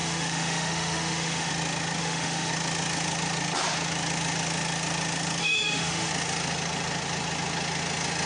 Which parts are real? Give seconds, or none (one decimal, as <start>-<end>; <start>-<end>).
1.5-2.0; 2.5-5.4; 6.1-8.3